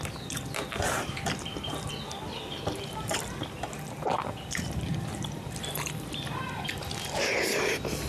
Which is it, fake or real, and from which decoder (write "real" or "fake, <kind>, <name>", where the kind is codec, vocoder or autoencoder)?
fake, vocoder, BigVGAN v2